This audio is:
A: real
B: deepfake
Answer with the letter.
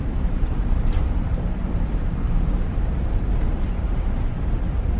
B